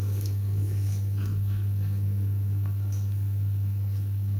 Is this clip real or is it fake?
fake